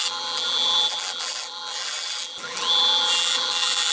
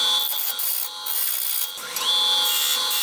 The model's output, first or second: first